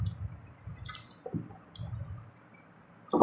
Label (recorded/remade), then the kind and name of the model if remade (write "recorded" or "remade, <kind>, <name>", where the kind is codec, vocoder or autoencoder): recorded